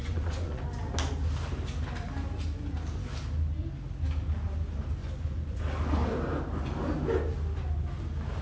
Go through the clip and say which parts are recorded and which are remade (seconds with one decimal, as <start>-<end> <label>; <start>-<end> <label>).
0.0-0.6 remade; 0.6-5.0 recorded; 5.0-5.6 remade; 5.6-8.4 recorded